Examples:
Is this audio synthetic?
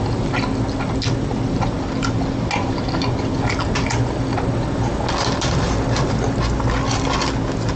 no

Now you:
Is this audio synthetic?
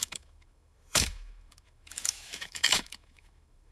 yes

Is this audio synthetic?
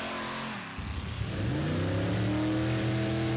no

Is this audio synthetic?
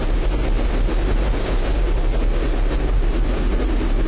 no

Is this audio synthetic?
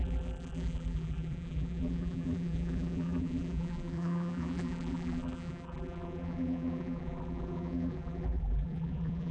yes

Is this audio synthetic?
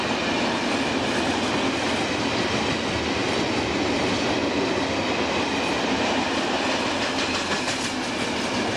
no